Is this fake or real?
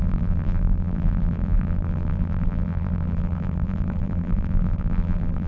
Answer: fake